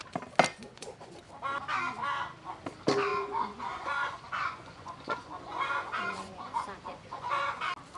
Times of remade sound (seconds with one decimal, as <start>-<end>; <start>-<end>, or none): 0.5-1.2; 3.1-7.6